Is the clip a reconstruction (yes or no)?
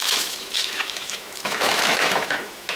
yes